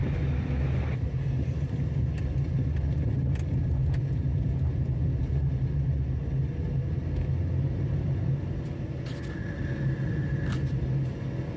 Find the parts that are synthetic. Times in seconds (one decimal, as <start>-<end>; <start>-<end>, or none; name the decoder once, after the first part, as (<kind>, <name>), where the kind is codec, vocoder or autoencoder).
3.8-5.2 (vocoder, Vocos)